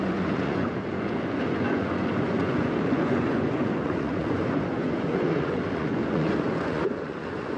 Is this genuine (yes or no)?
no